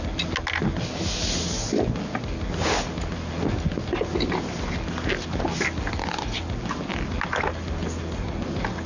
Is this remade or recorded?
recorded